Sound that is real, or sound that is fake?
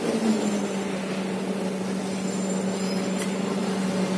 real